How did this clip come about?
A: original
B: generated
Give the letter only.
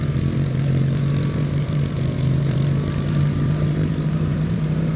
B